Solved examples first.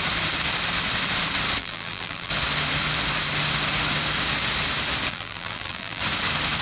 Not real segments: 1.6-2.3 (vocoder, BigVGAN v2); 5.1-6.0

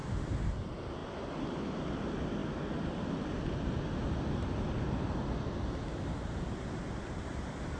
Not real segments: 0.0-0.5 (vocoder, BigVGAN v2)

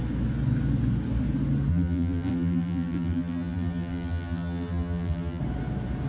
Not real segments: 1.7-5.4 (vocoder, BigVGAN v2)

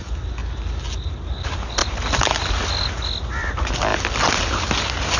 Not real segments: none

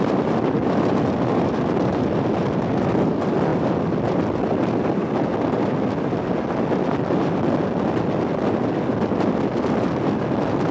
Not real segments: none